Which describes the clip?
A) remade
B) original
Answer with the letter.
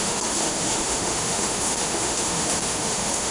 A